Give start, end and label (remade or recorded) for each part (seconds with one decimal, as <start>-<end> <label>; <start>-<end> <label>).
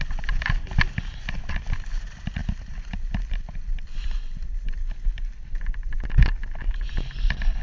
0.0-7.6 recorded